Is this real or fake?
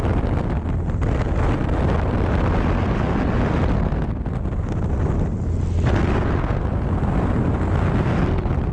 real